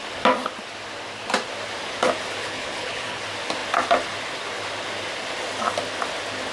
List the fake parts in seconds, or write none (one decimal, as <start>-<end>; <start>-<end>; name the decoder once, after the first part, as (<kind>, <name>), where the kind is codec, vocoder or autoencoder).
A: 2.4-3.2 (codec, HILCodec)